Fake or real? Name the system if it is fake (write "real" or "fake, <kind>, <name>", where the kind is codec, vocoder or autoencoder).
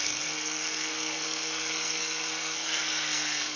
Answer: fake, codec, SNAC